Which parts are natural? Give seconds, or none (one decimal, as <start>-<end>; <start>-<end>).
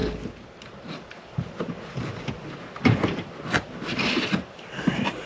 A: none